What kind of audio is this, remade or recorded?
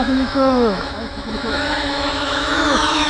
remade